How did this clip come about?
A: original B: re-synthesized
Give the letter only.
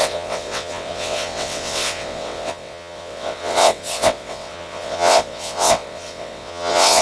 B